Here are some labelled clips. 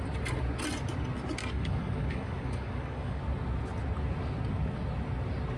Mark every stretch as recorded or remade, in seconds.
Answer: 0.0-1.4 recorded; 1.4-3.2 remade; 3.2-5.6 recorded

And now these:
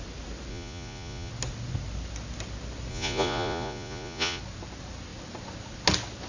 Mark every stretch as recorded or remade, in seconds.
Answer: 0.0-0.5 recorded; 0.5-1.3 remade; 1.3-2.9 recorded; 2.9-4.4 remade; 4.4-6.3 recorded

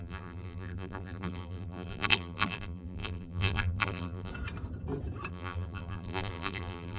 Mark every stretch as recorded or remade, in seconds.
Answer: 0.0-4.3 remade; 4.3-5.3 recorded; 5.3-7.0 remade

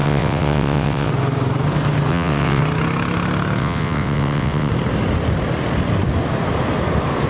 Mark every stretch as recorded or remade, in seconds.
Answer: 0.0-1.1 remade; 1.1-2.1 recorded; 2.1-2.6 remade; 2.6-3.6 recorded; 3.6-4.7 remade; 4.7-7.3 recorded